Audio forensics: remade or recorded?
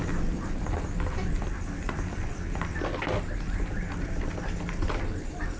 recorded